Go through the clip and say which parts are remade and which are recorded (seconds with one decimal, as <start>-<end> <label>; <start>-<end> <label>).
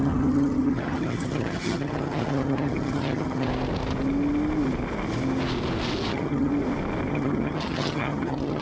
0.0-3.5 remade; 3.5-6.1 recorded; 6.1-6.5 remade; 6.5-7.1 recorded; 7.1-8.6 remade